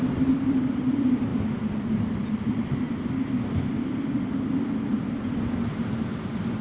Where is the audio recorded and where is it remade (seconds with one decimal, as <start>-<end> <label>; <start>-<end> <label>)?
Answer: 0.0-6.6 recorded